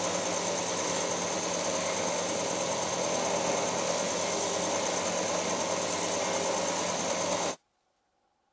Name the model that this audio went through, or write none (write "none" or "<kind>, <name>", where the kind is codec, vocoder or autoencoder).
none